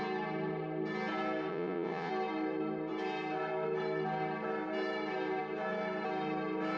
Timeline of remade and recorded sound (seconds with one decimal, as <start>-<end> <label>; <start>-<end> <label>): 0.0-1.5 recorded; 1.5-2.1 remade; 2.1-6.8 recorded